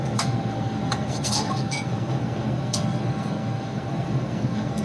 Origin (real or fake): fake